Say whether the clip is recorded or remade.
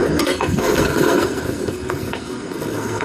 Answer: remade